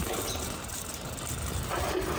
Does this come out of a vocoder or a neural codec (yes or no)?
no